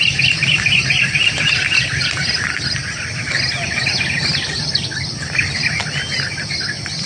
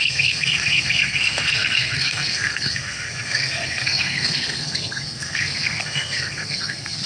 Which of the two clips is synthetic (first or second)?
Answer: second